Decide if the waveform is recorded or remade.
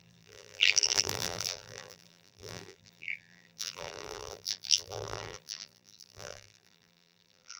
remade